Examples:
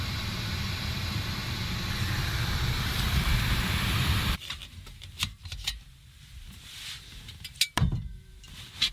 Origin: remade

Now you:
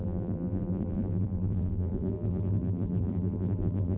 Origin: remade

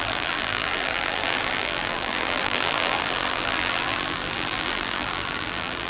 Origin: remade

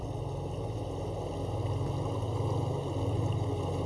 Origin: recorded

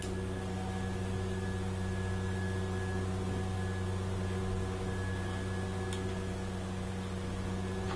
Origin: recorded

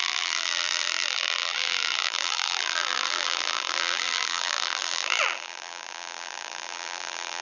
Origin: remade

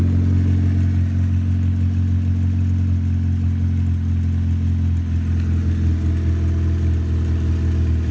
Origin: recorded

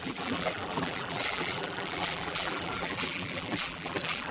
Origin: remade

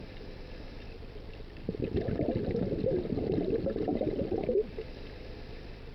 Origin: recorded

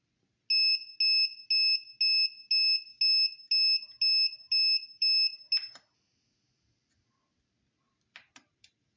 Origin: recorded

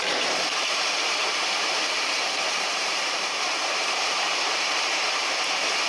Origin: remade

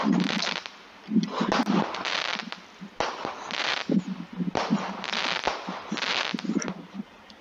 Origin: recorded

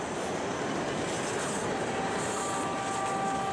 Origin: recorded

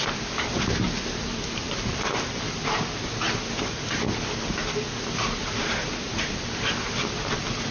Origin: recorded